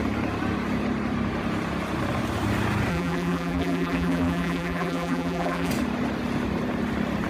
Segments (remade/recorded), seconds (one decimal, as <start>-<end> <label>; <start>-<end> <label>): 0.0-2.9 recorded; 2.9-5.7 remade; 5.7-7.3 recorded